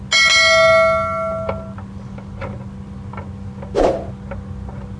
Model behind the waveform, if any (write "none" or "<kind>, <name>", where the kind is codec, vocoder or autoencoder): none